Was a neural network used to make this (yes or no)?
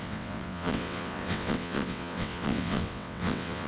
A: yes